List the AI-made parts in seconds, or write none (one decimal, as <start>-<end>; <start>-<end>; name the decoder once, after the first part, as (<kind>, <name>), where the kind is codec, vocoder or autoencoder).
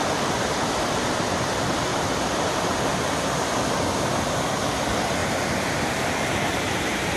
0.0-1.9 (vocoder, BigVGAN v2); 3.7-7.2